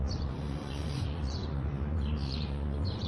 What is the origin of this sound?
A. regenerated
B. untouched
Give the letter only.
A